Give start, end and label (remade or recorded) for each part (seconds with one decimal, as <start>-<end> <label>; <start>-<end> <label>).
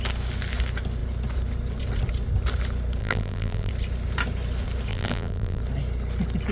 0.0-3.0 recorded; 3.0-3.7 remade; 3.7-4.9 recorded; 4.9-5.6 remade; 5.6-6.5 recorded